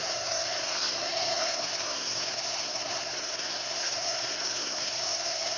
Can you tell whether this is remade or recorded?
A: remade